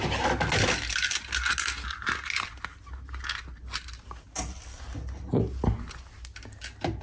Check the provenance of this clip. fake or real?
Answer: real